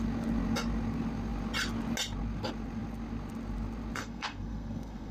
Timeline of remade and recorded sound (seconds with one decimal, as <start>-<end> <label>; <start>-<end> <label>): 0.0-4.0 recorded; 4.0-5.1 remade